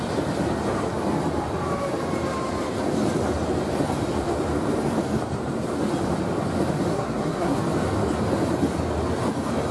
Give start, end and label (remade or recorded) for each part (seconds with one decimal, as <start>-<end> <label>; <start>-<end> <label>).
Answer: 0.0-6.9 recorded; 6.9-7.6 remade; 7.6-9.7 recorded